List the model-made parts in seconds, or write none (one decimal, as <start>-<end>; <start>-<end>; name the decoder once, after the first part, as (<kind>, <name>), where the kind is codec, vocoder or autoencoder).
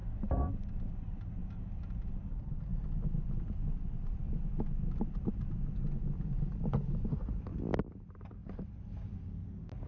none